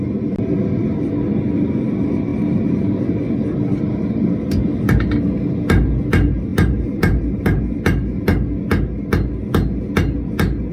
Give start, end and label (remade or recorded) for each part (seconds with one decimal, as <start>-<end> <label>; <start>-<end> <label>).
0.0-6.5 recorded; 6.5-7.6 remade; 7.6-10.7 recorded